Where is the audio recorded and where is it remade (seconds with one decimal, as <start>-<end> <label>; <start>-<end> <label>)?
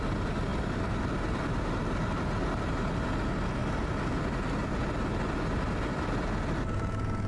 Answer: 0.0-7.3 remade